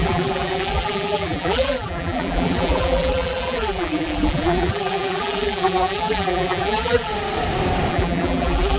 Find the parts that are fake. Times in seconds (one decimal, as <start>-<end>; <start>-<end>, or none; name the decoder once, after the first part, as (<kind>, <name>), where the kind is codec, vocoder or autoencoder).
0.0-7.1 (vocoder, BigVGAN v2); 7.9-8.8

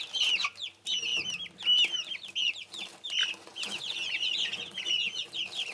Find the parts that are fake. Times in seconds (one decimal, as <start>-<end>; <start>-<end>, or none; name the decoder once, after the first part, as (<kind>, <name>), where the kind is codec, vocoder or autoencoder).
3.5-5.3 (vocoder, Vocos)

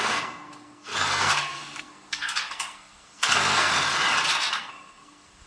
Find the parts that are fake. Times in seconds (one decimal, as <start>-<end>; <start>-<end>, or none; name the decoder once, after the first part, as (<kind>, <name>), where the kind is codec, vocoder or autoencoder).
0.0-3.7 (codec, SNAC); 4.5-5.5

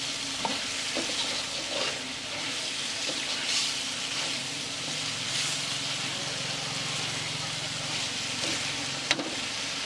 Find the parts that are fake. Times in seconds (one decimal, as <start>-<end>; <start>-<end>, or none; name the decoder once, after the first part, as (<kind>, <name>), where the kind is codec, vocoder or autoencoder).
none

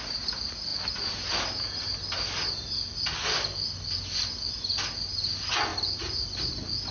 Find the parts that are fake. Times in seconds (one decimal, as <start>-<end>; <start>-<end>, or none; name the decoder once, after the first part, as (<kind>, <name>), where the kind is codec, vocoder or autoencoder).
none